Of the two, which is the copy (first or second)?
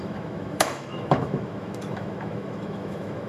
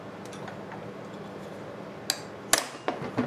first